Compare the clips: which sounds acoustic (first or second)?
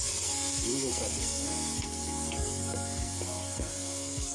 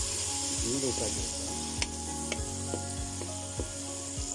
second